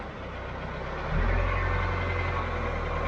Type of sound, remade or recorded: recorded